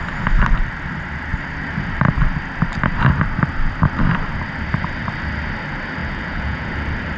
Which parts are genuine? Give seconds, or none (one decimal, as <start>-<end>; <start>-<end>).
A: 0.0-6.0; 6.7-7.2